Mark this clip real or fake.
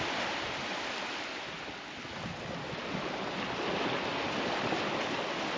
real